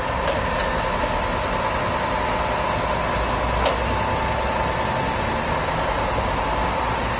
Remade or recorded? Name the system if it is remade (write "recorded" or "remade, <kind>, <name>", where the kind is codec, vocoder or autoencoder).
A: recorded